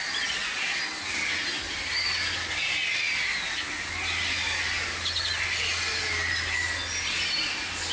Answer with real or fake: real